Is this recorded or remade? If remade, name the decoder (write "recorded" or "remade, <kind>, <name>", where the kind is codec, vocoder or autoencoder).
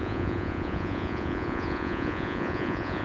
remade, vocoder, Vocos